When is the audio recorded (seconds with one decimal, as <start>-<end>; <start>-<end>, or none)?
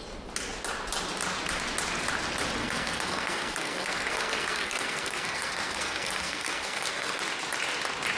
0.0-2.6; 7.2-8.2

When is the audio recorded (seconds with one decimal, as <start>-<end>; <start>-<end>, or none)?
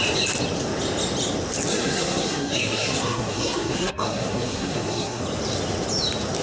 0.0-1.7; 5.2-6.4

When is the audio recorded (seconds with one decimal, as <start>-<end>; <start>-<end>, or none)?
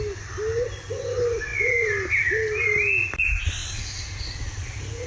0.0-5.1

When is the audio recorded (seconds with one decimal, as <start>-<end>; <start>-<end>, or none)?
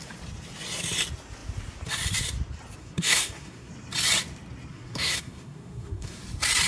0.0-2.8; 3.7-4.7; 6.2-6.7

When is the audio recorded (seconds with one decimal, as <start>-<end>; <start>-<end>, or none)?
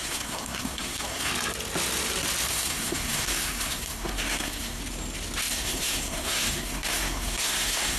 1.3-2.5; 4.8-5.5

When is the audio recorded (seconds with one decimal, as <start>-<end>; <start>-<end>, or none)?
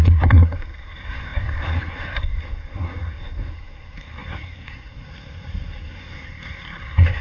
none